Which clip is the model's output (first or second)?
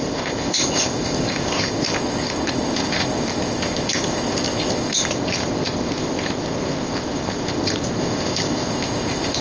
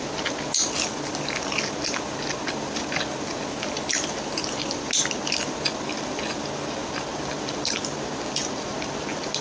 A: first